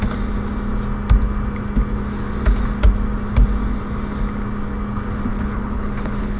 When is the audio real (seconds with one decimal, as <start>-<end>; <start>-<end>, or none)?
0.0-5.3